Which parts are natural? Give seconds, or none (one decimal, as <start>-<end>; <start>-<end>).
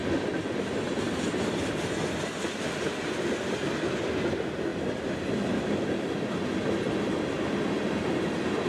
0.0-8.7